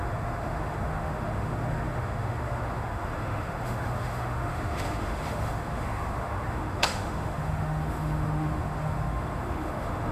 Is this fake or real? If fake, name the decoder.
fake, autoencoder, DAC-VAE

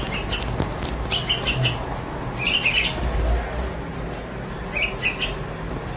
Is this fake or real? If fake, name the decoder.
real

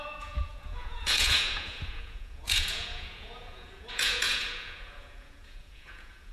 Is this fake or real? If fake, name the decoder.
fake, vocoder, Vocos